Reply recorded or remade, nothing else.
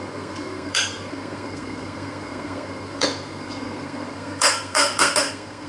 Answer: remade